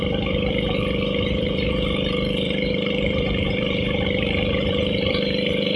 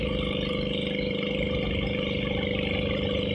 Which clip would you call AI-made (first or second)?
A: first